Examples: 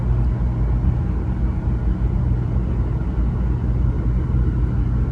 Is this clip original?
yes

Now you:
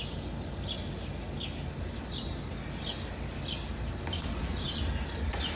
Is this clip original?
yes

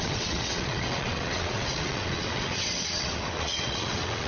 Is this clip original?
no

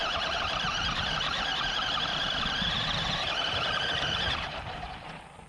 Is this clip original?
no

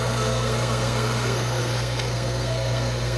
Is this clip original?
no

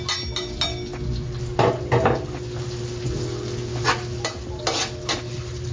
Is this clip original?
yes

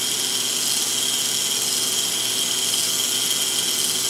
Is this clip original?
yes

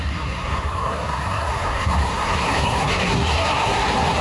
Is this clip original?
no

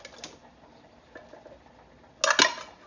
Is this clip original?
yes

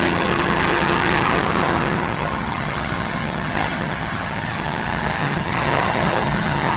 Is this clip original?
no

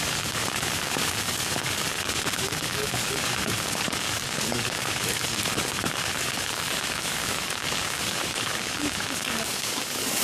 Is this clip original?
no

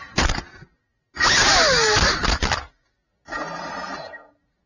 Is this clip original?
yes